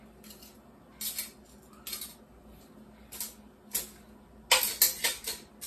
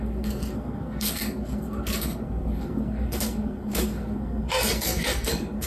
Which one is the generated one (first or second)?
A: second